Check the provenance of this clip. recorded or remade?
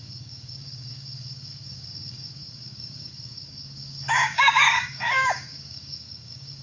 remade